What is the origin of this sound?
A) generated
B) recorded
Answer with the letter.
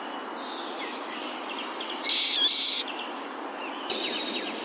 B